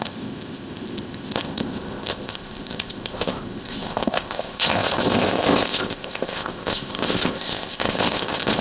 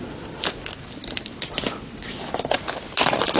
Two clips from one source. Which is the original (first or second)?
second